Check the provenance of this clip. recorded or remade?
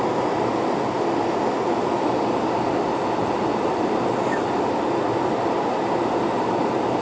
recorded